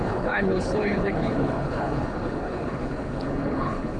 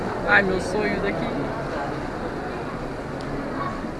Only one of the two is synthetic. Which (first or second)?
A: first